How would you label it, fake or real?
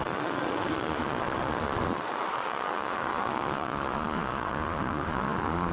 fake